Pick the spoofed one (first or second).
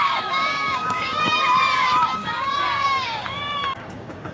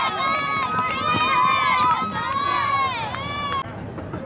first